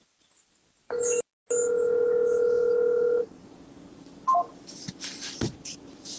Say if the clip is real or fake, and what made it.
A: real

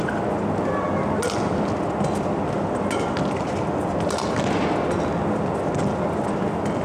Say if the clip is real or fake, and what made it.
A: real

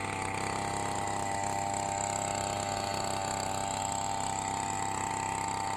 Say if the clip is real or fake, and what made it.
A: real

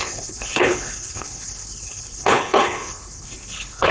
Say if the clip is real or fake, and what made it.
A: fake, codec, HILCodec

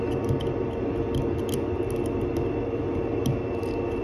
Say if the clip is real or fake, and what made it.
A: real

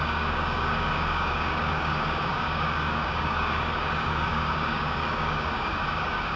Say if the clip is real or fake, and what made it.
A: fake, codec, DAC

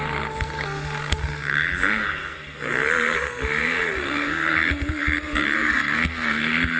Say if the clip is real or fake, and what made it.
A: fake, codec, SNAC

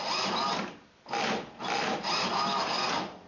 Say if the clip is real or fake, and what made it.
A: real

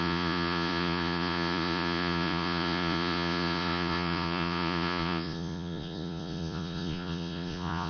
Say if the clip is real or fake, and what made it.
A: fake, vocoder, Vocos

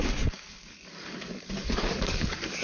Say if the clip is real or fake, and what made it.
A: fake, codec, DAC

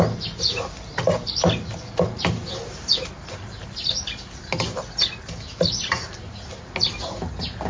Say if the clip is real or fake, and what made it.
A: real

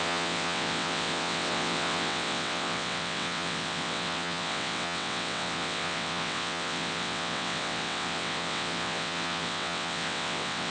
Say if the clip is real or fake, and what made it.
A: fake, vocoder, WaveNeXt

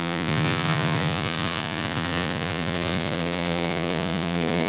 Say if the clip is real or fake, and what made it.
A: fake, vocoder, Vocos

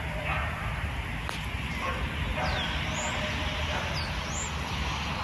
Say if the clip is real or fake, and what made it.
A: real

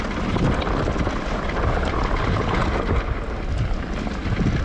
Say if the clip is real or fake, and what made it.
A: real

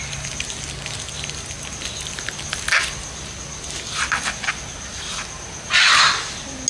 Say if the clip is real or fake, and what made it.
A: real